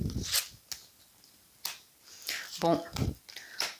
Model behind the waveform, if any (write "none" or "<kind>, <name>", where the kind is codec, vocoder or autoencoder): none